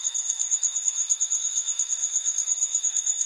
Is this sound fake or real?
fake